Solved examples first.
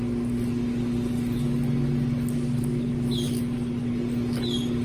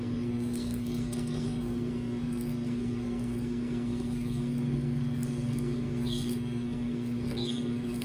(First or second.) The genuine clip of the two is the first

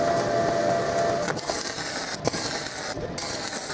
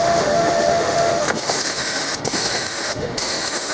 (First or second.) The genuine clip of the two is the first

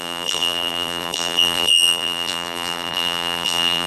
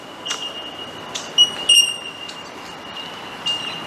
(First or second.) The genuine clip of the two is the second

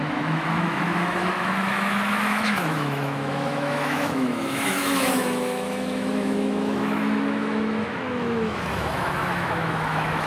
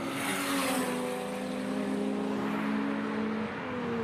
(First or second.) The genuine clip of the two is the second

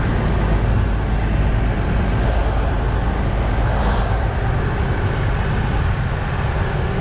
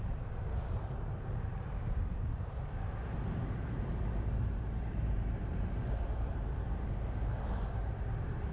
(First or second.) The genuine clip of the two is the first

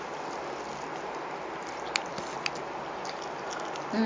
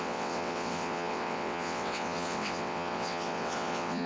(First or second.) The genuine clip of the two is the first